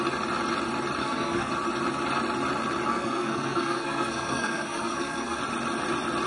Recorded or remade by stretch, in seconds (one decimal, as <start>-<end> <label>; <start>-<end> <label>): 0.0-1.0 recorded; 1.0-1.5 remade; 1.5-2.9 recorded; 2.9-5.4 remade; 5.4-6.3 recorded